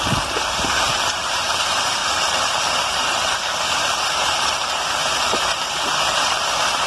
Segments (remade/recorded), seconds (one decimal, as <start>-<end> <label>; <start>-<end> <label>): 0.0-2.0 remade; 2.0-3.6 recorded; 3.6-6.9 remade